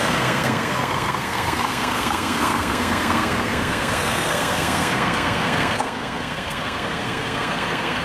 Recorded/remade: remade